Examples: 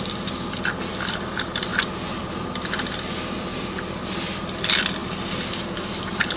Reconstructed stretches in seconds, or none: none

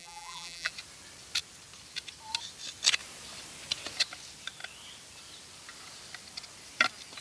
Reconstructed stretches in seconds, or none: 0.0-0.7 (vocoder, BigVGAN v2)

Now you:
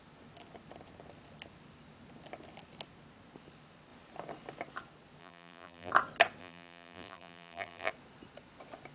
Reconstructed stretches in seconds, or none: 5.2-5.9 (vocoder, BigVGAN v2); 6.4-7.9

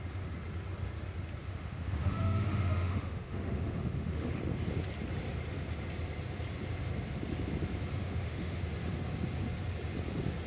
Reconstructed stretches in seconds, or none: 1.4-4.4 (autoencoder, DAC-VAE); 8.0-8.6